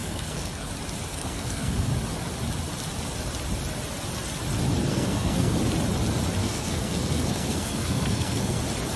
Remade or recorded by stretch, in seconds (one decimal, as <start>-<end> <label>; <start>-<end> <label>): 0.0-0.7 remade; 0.7-1.1 recorded; 1.1-1.9 remade; 1.9-4.9 recorded; 4.9-5.6 remade; 5.6-6.4 recorded; 6.4-8.6 remade; 8.6-9.0 recorded